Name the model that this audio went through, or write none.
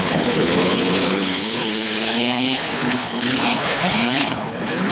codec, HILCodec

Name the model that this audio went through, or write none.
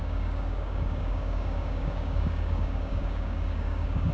codec, DAC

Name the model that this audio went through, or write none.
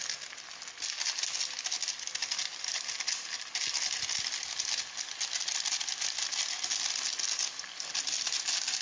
none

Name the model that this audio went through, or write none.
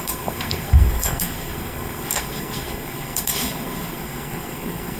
codec, SNAC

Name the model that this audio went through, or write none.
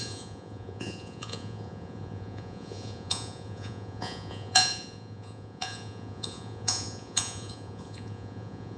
vocoder, Vocos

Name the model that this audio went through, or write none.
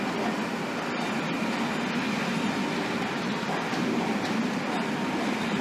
none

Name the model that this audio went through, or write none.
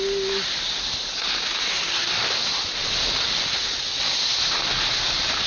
none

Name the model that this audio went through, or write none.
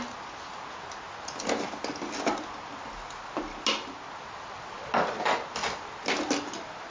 none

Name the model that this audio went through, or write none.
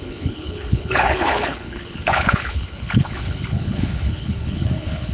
codec, HILCodec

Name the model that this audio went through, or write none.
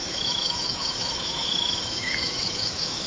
autoencoder, DAC-VAE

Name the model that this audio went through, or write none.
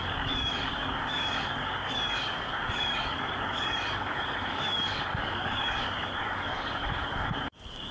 codec, DAC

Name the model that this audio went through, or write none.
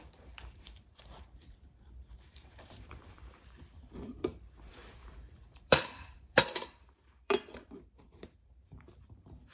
vocoder, BigVGAN v2